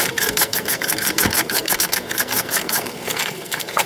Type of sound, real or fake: fake